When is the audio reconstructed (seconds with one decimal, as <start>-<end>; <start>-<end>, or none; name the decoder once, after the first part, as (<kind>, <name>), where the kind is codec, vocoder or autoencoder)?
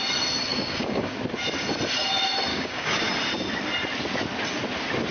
0.5-1.1 (codec, DAC); 2.5-3.1